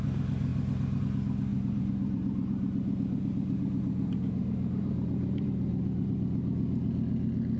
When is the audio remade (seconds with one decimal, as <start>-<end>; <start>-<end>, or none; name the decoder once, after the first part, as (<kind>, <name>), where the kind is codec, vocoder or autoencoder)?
1.5-6.1 (vocoder, BigVGAN v2)